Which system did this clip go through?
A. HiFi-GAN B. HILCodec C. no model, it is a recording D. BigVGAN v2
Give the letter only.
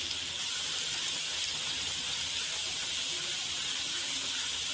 C